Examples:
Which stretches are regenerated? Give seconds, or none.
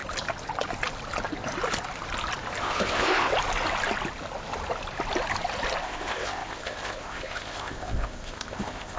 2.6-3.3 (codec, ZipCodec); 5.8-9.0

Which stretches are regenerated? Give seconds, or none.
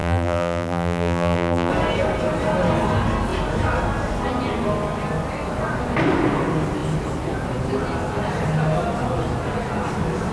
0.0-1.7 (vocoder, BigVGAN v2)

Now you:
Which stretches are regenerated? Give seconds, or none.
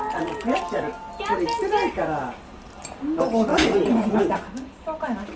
none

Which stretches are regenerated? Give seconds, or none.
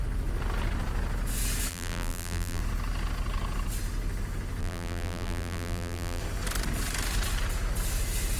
1.7-2.6 (vocoder, BigVGAN v2); 4.6-6.2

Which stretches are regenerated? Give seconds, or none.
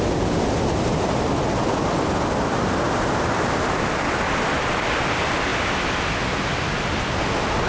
none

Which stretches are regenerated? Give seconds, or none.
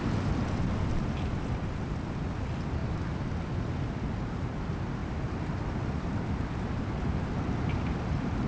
none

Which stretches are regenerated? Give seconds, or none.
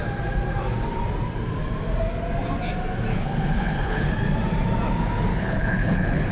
3.1-4.1 (codec, HILCodec); 5.3-6.3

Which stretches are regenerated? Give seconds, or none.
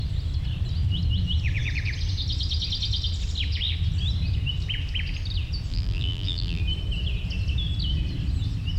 5.7-6.6 (vocoder, BigVGAN v2)